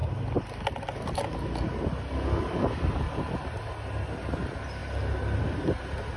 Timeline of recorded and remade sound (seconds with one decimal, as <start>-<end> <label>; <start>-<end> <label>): 0.0-6.2 recorded